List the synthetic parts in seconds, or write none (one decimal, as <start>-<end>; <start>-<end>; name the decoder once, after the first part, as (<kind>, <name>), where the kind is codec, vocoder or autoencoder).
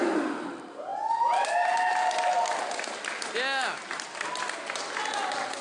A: none